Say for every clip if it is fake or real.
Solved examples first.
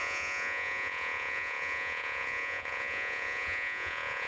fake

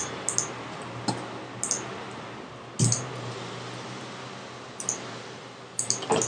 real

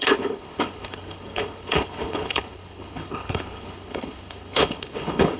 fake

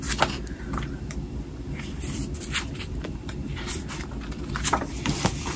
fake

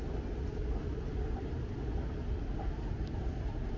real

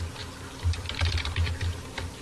real